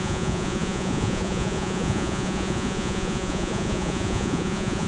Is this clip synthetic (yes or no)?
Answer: yes